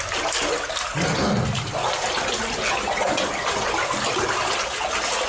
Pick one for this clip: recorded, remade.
recorded